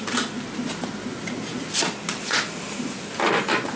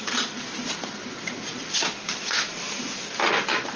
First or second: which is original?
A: first